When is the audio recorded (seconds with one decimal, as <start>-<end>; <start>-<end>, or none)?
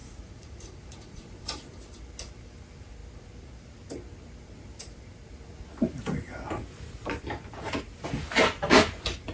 1.3-9.3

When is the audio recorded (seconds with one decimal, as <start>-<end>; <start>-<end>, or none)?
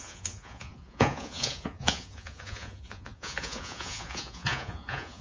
none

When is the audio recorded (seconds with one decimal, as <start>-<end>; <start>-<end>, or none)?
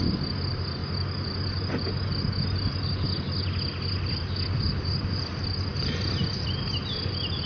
0.0-7.5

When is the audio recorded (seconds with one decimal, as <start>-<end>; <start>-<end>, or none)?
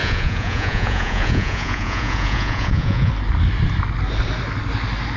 3.1-5.2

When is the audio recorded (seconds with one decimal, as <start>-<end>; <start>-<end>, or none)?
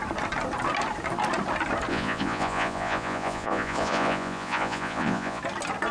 0.0-1.9; 5.4-5.9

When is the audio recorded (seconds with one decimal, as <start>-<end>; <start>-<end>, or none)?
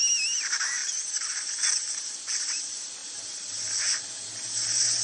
0.0-5.0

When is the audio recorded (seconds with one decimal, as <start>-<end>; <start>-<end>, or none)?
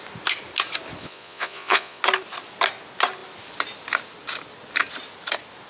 0.0-1.0; 2.0-5.7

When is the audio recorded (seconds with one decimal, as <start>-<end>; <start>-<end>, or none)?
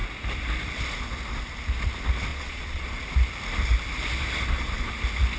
0.0-2.3; 2.9-5.4